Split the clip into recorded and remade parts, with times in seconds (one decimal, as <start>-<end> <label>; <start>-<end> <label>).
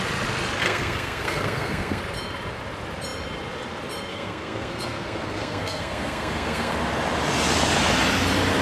0.0-0.6 recorded; 0.6-2.0 remade; 2.0-4.1 recorded; 4.1-6.7 remade; 6.7-8.6 recorded